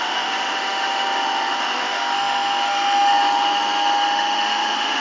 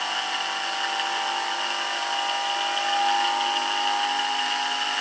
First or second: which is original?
second